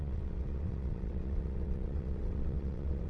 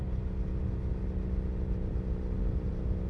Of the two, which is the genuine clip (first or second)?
second